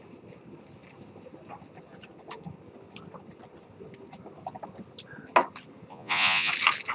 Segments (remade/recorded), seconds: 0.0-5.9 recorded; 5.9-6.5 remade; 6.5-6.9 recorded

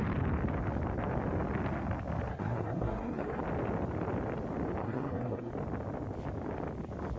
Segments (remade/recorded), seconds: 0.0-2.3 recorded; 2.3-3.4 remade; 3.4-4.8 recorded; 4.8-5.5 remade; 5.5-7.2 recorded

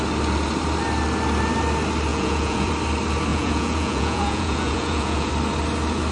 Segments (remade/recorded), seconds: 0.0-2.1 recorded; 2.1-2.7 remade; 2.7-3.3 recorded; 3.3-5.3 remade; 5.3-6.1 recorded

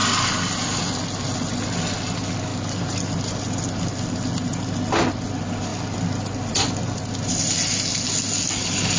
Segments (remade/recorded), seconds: 0.0-0.8 remade; 0.8-5.7 recorded; 5.7-7.4 remade; 7.4-9.0 recorded

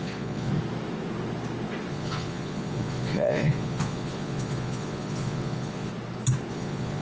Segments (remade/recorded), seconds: 0.0-0.5 remade; 0.5-1.9 recorded; 1.9-5.9 remade; 5.9-6.5 recorded; 6.5-7.0 remade

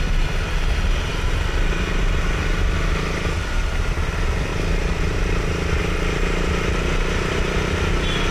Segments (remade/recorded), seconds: 0.0-8.3 recorded

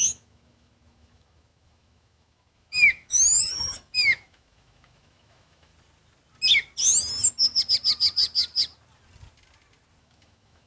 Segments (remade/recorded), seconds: 0.0-5.7 remade; 5.7-10.0 recorded; 10.0-10.7 remade

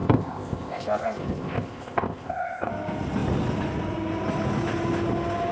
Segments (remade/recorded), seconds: 0.0-2.7 remade; 2.7-5.5 recorded